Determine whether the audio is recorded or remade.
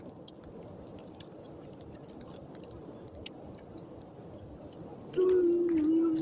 recorded